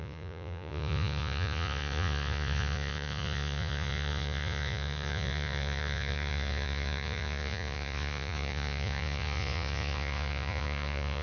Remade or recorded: remade